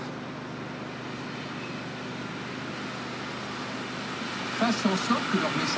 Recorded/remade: recorded